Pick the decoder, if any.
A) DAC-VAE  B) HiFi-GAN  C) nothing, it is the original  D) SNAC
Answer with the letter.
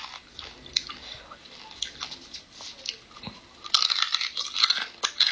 C